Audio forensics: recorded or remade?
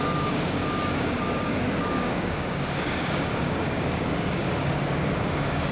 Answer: remade